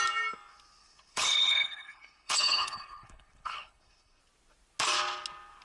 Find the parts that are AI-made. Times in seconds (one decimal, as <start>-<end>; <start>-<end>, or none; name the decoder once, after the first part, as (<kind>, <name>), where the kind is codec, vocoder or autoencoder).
0.8-4.2 (codec, HILCodec)